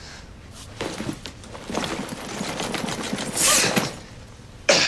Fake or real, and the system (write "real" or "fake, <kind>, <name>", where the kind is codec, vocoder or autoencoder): fake, vocoder, BigVGAN v2